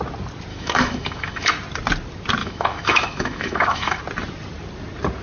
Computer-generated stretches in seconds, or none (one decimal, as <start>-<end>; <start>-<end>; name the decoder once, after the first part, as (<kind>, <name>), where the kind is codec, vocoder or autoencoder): 0.5-1.5 (autoencoder, DAC-VAE); 2.4-4.0